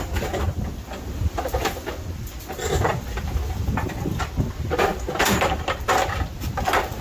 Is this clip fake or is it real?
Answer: real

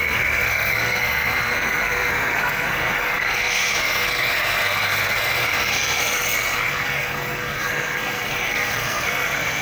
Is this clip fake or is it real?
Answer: fake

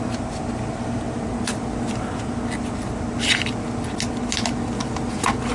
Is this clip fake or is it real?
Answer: real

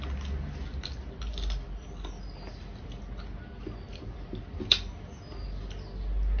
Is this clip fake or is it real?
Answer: real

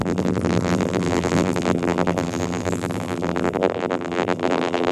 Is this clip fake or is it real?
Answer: fake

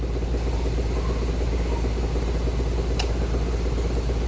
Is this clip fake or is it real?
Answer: real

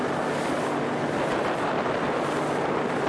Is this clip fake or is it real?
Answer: real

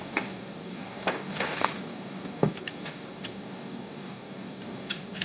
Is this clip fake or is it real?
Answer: fake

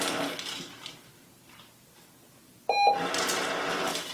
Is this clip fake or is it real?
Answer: real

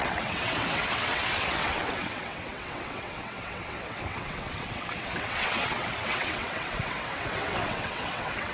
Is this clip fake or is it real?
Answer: fake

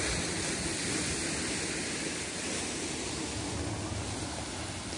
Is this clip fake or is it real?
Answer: real